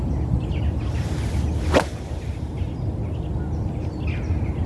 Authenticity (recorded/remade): recorded